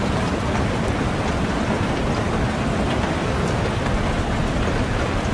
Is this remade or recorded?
recorded